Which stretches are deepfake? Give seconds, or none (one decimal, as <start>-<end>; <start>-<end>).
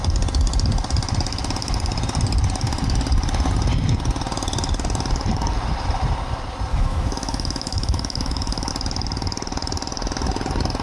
6.7-8.7